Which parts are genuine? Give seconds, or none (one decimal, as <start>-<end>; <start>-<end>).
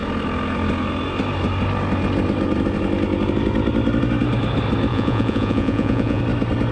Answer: 0.0-4.9; 6.2-6.7